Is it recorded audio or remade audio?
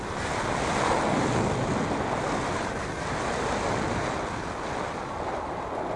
recorded